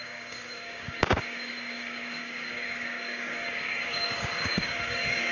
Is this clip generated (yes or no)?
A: yes